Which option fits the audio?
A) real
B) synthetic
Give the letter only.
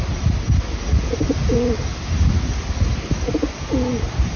A